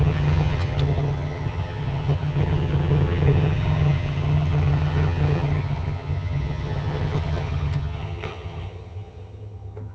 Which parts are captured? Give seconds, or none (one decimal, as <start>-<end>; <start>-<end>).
none